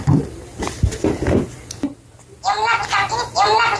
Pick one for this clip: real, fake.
fake